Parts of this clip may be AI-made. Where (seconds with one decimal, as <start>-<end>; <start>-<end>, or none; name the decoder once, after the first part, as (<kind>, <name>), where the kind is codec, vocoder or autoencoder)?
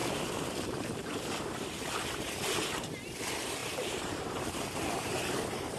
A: 0.0-2.2 (vocoder, BigVGAN v2); 3.6-5.8